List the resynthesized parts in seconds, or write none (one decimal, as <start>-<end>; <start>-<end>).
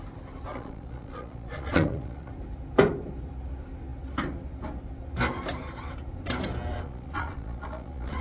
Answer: 0.5-2.3; 6.7-8.2